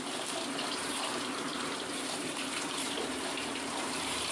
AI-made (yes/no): yes